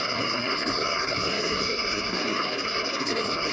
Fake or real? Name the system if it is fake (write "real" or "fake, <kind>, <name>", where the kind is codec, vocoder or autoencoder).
fake, codec, SNAC